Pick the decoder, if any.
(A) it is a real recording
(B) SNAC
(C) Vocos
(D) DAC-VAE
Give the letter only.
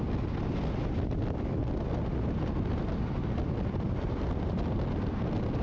A